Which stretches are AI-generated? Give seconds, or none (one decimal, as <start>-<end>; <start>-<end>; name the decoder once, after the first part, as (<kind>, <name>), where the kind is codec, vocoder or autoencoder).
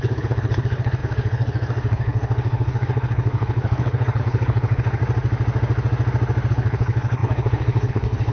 0.0-5.0 (codec, HILCodec); 6.5-8.3